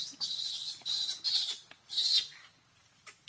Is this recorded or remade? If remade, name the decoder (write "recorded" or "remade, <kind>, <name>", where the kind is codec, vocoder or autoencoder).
recorded